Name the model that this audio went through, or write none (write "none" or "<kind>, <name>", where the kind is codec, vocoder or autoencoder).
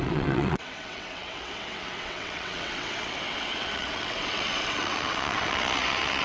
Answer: vocoder, WaveNeXt